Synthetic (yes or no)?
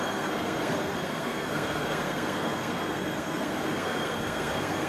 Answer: yes